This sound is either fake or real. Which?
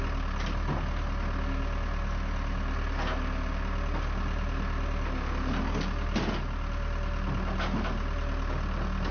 real